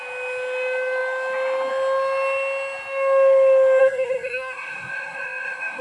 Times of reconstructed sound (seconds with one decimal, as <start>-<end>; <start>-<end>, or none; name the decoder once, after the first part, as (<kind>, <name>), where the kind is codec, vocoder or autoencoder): 3.8-5.8 (codec, SNAC)